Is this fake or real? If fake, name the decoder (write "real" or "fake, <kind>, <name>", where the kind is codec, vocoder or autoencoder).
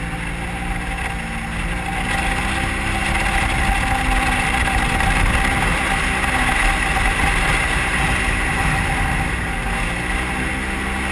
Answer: real